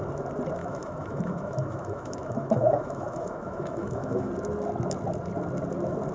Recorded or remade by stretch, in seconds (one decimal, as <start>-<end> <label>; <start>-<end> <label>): 0.0-0.6 recorded; 0.6-4.3 remade; 4.3-6.1 recorded